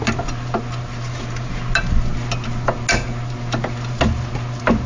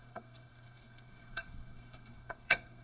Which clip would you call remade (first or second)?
second